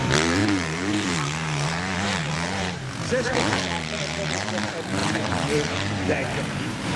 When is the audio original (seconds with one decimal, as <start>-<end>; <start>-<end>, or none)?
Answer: 0.0-0.4; 4.6-5.0